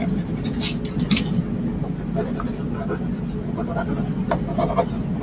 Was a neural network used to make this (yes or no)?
no